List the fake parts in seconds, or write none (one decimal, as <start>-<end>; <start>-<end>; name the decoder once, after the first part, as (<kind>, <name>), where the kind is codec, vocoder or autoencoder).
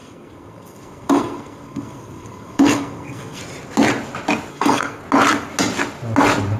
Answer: 0.0-3.4 (codec, SNAC); 4.5-5.0